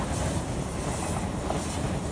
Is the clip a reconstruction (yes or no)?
no